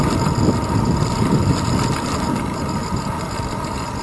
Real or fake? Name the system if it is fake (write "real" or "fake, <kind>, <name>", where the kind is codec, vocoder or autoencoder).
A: real